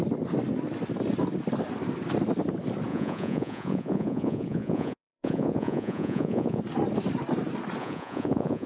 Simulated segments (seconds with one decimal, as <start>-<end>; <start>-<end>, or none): 2.9-6.6; 7.8-8.7